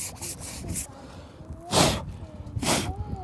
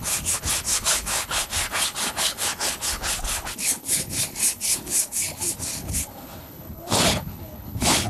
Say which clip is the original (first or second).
first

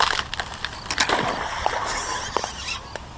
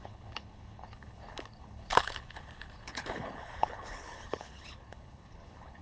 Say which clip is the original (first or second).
first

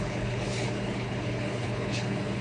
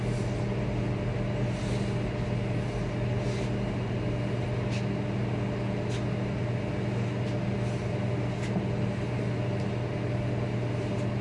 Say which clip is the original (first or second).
second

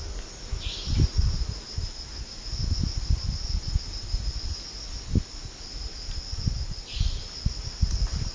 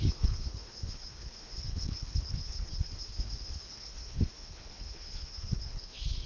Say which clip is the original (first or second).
first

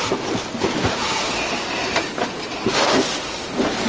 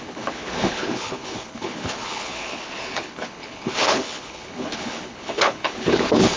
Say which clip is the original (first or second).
first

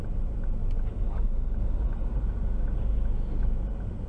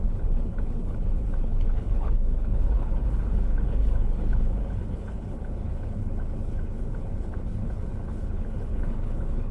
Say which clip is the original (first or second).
first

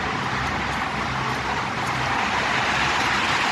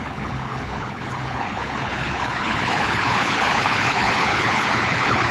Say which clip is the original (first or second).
first